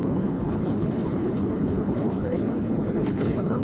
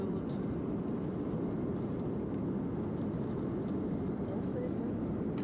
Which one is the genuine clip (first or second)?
second